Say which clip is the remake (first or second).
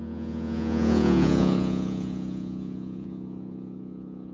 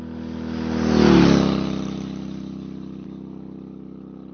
first